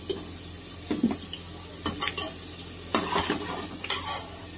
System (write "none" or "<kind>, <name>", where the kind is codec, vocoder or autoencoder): none